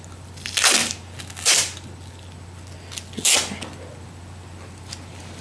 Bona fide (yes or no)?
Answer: yes